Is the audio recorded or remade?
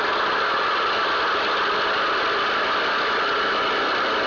recorded